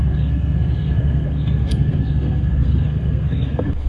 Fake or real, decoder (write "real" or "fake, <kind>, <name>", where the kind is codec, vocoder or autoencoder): fake, codec, SNAC